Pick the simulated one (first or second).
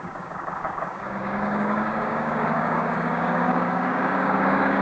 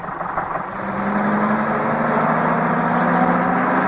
first